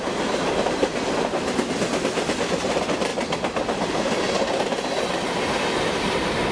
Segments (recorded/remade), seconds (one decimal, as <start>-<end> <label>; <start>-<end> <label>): 0.0-0.9 remade; 0.9-2.4 recorded; 2.4-3.1 remade; 3.1-6.0 recorded; 6.0-6.5 remade